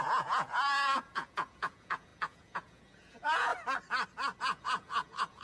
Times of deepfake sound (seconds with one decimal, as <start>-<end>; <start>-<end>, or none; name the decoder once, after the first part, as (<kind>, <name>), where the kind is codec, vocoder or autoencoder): 0.0-3.5 (vocoder, Vocos); 4.4-5.4